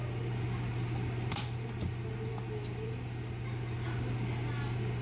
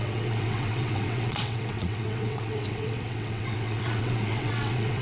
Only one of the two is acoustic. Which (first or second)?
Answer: first